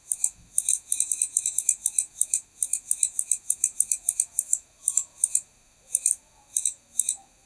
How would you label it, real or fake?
fake